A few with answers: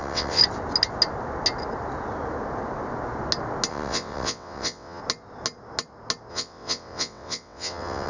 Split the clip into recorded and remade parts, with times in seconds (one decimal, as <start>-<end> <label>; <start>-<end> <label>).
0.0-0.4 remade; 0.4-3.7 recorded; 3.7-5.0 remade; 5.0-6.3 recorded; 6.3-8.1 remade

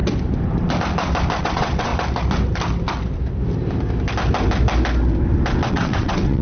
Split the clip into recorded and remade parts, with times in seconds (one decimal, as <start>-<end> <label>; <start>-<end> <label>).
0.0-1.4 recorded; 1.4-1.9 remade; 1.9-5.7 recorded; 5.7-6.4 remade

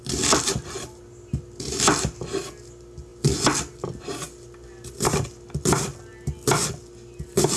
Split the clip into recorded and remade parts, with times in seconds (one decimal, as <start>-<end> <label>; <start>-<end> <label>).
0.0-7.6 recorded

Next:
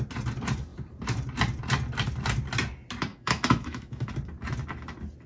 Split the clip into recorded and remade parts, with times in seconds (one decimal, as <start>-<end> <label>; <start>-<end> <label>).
0.0-3.1 recorded; 3.1-4.1 remade; 4.1-5.3 recorded

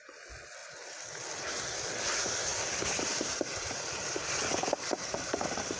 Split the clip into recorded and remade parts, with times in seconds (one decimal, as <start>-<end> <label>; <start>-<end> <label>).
0.0-0.6 recorded; 0.6-1.1 remade; 1.1-2.5 recorded; 2.5-5.8 remade

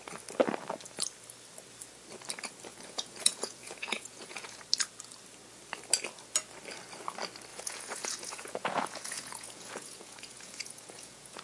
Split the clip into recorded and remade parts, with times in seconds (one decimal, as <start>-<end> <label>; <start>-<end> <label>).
0.0-2.7 recorded; 2.7-4.6 remade; 4.6-7.5 recorded; 7.5-11.4 remade

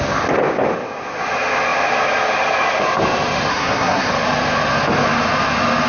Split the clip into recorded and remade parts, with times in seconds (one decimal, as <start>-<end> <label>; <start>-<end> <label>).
0.0-3.5 recorded; 3.5-4.1 remade; 4.1-5.9 recorded